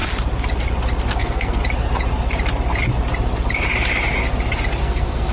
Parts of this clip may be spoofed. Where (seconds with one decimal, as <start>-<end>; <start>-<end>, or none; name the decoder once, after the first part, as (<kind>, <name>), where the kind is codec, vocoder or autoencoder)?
1.1-1.6 (codec, SNAC); 4.8-5.3